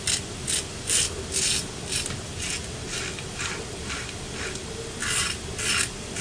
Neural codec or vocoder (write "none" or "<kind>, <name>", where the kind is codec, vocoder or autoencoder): none